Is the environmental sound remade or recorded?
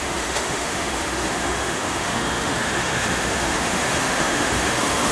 remade